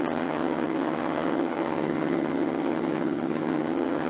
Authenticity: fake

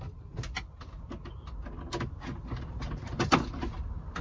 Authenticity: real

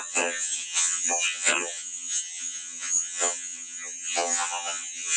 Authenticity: fake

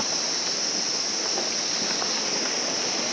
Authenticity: real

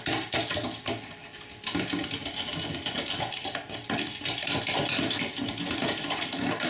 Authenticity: real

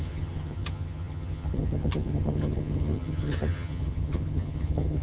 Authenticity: fake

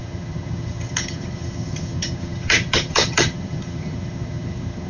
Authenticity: fake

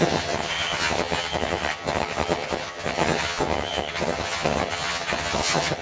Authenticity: fake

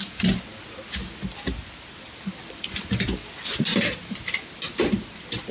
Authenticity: real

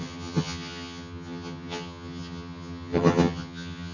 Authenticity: fake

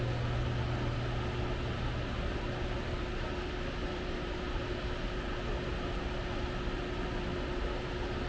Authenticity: real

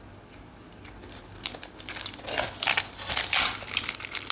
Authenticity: real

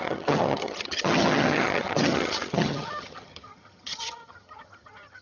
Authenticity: fake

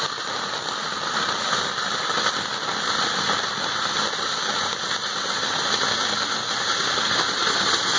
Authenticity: real